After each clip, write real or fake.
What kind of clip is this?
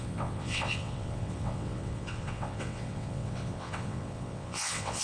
fake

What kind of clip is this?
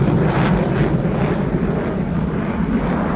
real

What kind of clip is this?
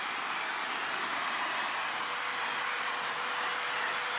real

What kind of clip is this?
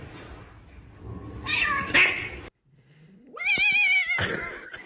real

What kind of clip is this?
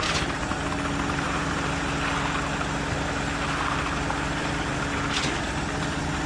real